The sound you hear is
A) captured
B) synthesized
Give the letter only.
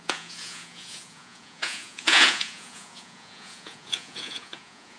B